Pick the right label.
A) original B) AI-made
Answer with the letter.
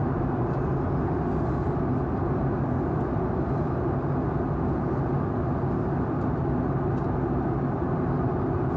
A